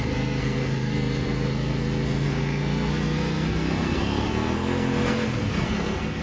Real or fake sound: fake